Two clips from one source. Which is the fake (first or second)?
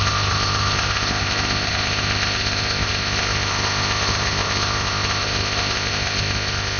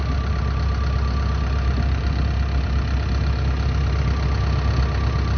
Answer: first